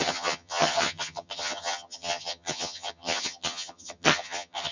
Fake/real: fake